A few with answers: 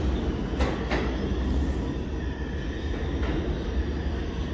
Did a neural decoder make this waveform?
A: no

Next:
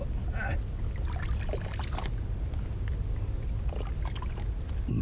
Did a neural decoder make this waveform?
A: no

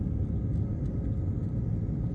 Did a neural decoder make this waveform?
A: no